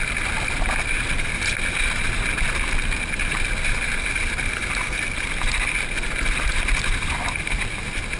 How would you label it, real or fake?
real